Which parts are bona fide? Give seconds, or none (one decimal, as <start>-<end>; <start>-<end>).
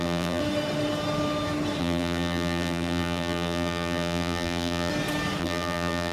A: 0.4-1.8; 4.9-5.4